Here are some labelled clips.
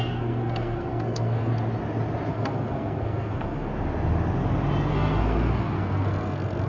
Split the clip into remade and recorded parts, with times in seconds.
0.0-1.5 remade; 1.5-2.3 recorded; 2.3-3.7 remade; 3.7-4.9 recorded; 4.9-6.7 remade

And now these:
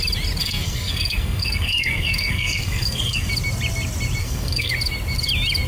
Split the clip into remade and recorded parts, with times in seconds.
0.0-0.4 recorded; 0.4-3.3 remade; 3.3-4.2 recorded; 4.2-4.7 remade; 4.7-5.7 recorded

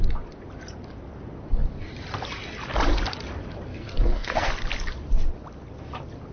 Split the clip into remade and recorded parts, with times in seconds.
0.0-3.7 recorded; 3.7-4.5 remade; 4.5-6.3 recorded

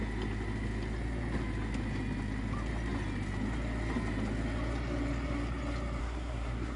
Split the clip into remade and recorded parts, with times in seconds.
0.0-6.0 recorded; 6.0-6.8 remade

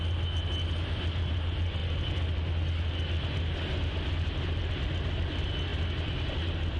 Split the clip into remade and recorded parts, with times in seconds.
0.0-6.8 recorded